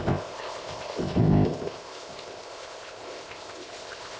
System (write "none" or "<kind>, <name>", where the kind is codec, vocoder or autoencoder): codec, ZipCodec